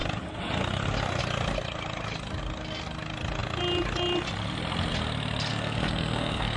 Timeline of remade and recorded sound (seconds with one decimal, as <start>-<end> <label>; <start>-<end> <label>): 0.0-5.5 recorded; 5.5-6.6 remade